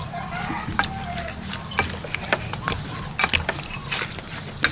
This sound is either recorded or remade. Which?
recorded